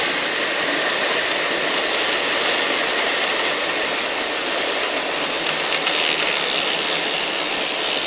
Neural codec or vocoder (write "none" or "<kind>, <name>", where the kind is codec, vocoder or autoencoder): none